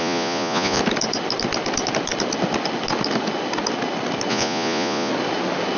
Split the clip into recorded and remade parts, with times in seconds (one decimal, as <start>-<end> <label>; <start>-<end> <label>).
0.0-0.8 remade; 0.8-4.3 recorded; 4.3-5.1 remade; 5.1-5.8 recorded